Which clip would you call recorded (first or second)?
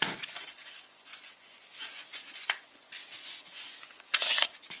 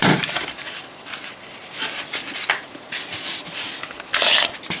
second